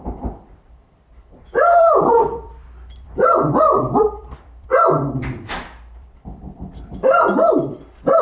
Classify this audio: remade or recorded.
remade